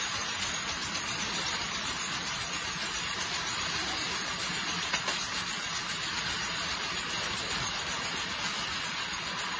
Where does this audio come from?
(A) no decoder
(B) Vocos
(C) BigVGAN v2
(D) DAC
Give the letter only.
A